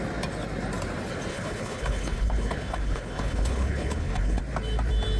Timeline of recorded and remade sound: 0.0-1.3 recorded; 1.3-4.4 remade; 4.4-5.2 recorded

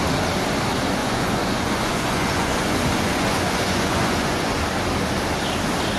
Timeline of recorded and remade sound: 0.0-1.0 recorded; 1.0-4.6 remade; 4.6-6.0 recorded

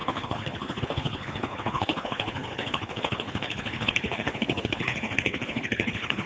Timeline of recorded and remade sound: 0.0-6.3 remade

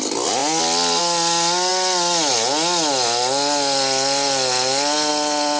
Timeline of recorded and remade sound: 0.0-5.6 recorded

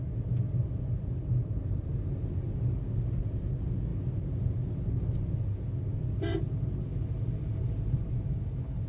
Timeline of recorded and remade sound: 0.0-0.6 recorded; 0.6-1.9 remade; 1.9-8.9 recorded

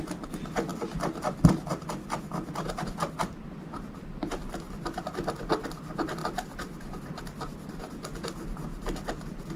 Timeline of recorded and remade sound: 0.0-6.2 recorded; 6.2-7.2 remade; 7.2-9.6 recorded